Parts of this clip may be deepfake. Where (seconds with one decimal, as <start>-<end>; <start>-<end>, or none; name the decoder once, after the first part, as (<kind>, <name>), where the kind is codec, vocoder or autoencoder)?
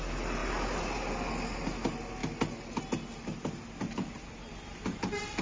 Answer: none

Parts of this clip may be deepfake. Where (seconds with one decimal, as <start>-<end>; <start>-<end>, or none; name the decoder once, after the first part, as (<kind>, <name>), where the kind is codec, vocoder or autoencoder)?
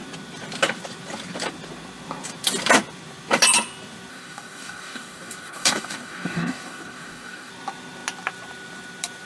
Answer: 4.1-7.5 (codec, DAC)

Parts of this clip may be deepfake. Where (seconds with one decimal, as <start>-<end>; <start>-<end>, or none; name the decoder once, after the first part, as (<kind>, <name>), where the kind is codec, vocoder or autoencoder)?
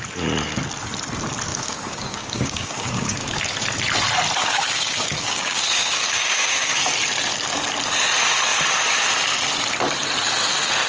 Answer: 1.5-3.4 (codec, DAC); 4.4-6.8